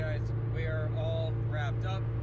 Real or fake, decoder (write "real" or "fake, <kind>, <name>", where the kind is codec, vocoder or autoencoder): real